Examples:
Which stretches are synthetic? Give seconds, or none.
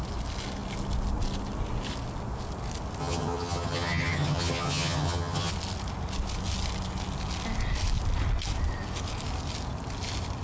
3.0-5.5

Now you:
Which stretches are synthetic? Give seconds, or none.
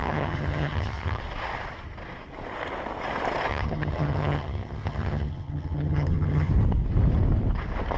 0.0-1.2; 3.5-6.5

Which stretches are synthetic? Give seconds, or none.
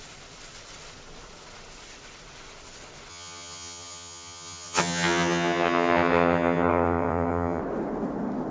3.1-7.6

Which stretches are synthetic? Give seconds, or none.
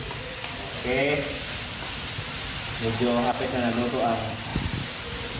none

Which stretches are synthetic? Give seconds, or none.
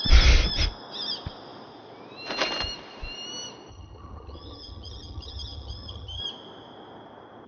3.7-6.2